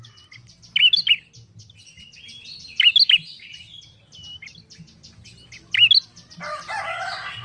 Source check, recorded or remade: recorded